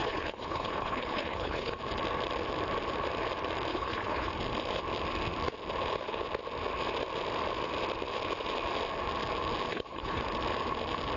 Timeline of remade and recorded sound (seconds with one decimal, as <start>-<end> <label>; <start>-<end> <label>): 0.0-1.8 remade; 1.8-3.7 recorded; 3.7-4.3 remade; 4.3-9.7 recorded; 9.7-10.2 remade; 10.2-11.2 recorded

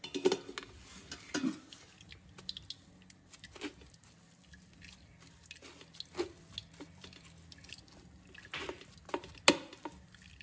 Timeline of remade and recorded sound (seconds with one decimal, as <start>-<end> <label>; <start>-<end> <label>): 0.0-10.4 recorded

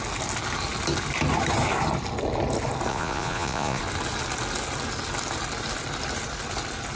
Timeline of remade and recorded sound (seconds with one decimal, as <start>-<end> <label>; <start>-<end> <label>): 0.0-2.9 recorded; 2.9-3.8 remade; 3.8-7.0 recorded

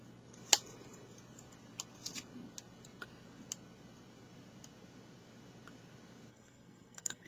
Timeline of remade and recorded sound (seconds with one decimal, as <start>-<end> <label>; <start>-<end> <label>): 0.0-6.3 recorded; 6.3-7.3 remade

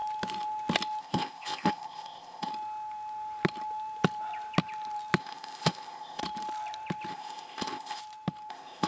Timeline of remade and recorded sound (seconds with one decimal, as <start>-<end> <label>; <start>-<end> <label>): 0.0-1.0 recorded; 1.0-2.5 remade; 2.5-5.2 recorded; 5.2-6.2 remade; 6.2-7.1 recorded; 7.1-8.0 remade; 8.0-8.5 recorded; 8.5-8.9 remade

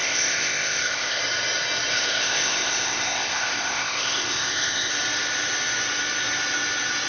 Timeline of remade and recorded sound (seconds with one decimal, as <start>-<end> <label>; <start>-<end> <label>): 0.0-1.2 remade; 1.2-1.9 recorded; 1.9-4.9 remade; 4.9-7.1 recorded